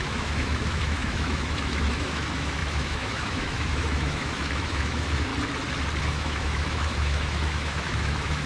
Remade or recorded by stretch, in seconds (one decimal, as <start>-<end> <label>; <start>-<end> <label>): 0.0-5.3 remade; 5.3-6.0 recorded; 6.0-8.5 remade